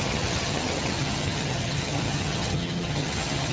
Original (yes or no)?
no